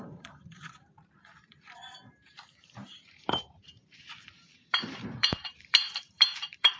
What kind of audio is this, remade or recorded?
remade